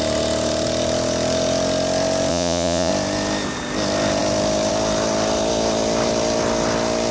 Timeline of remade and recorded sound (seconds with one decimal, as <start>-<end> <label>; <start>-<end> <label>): 0.0-2.3 recorded; 2.3-2.9 remade; 2.9-7.1 recorded